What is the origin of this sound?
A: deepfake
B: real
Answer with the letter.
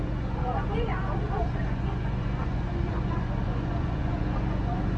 A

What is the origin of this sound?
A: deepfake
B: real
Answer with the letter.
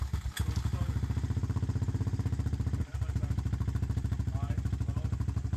B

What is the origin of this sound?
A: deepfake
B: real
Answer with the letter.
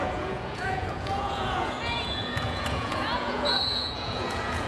A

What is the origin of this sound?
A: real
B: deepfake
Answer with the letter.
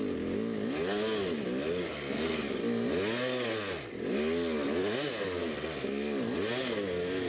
A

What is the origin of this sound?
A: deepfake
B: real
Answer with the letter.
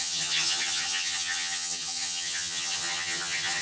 A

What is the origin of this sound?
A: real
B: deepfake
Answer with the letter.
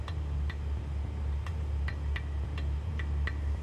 A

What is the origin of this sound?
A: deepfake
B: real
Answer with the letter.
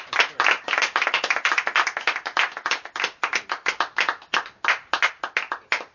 B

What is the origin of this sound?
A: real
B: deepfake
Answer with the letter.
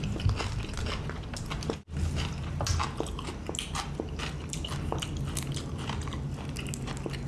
A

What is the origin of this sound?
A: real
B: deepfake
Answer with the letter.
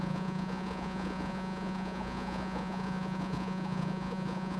B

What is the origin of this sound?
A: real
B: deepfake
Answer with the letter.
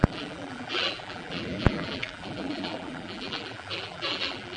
B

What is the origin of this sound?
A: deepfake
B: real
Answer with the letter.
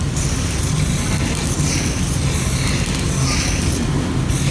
B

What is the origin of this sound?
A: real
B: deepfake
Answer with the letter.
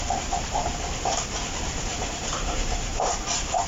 B